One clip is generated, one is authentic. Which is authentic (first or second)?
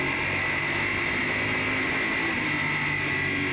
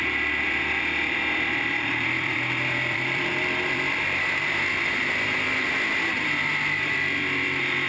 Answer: first